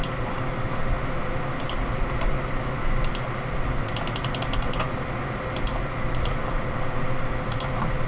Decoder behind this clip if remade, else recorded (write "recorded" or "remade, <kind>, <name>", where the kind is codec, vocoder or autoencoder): recorded